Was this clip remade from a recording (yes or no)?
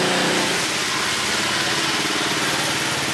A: no